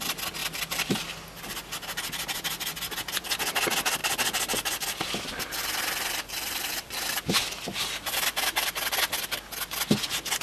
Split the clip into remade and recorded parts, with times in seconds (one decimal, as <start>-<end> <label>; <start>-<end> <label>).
0.0-0.4 recorded; 0.4-1.0 remade; 1.0-4.0 recorded; 4.0-8.9 remade; 8.9-10.4 recorded